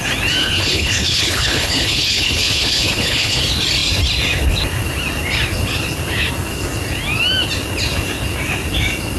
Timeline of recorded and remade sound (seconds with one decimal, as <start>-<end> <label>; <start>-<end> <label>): 0.0-0.4 recorded; 0.4-3.4 remade; 3.4-9.2 recorded